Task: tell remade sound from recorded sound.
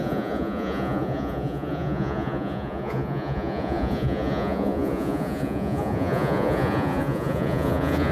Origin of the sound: remade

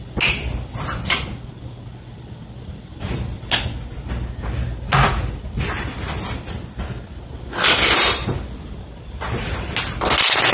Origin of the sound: recorded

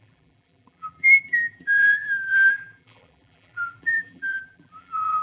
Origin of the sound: remade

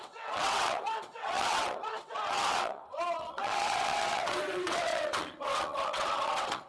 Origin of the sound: remade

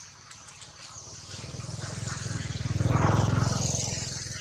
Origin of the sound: recorded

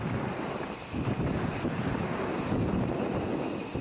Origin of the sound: recorded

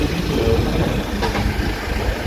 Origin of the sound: recorded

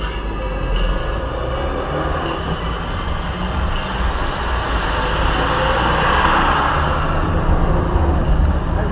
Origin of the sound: recorded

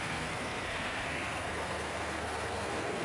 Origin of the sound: remade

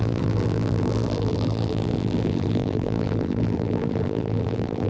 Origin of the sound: remade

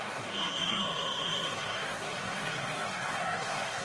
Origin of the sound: remade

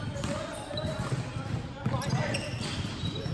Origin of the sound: recorded